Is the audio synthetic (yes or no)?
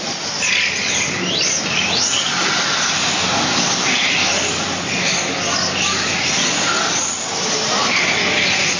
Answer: no